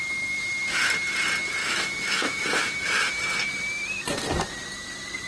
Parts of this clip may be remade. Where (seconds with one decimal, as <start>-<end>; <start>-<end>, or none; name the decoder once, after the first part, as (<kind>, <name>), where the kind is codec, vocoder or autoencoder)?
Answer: 1.6-3.1 (autoencoder, DAC-VAE)